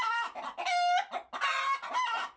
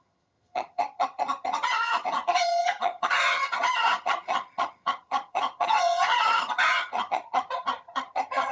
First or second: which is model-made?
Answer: second